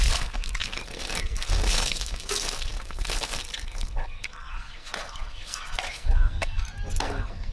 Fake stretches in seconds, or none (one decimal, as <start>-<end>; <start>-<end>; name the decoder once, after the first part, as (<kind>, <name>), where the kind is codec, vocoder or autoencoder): 0.0-7.5 (codec, SNAC)